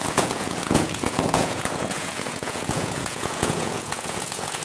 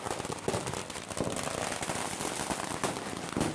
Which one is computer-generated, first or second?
first